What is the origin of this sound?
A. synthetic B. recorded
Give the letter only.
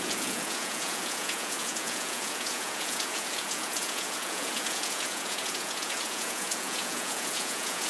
A